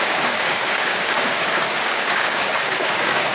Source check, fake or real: fake